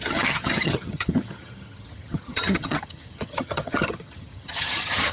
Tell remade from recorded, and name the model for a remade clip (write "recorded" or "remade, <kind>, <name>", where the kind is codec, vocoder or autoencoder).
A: remade, vocoder, HiFi-GAN